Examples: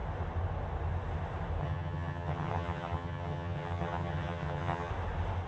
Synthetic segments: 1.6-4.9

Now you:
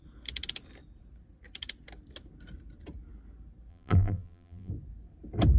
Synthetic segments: 3.7-4.7

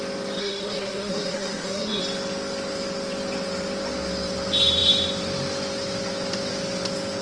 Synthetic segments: 0.4-2.0

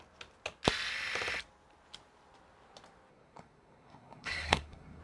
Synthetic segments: 3.1-5.0